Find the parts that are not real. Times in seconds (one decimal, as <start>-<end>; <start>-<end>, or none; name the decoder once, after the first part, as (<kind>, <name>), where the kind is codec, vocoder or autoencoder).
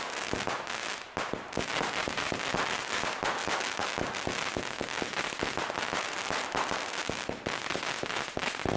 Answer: 3.4-4.0 (autoencoder, DAC-VAE)